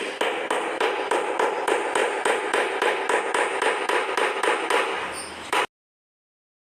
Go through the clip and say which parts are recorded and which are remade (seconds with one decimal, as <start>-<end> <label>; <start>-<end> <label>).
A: 0.0-6.7 recorded